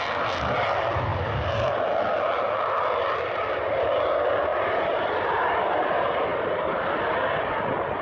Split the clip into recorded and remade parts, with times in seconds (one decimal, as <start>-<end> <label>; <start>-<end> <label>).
0.0-1.1 recorded; 1.1-1.7 remade; 1.7-6.3 recorded; 6.3-7.0 remade; 7.0-8.0 recorded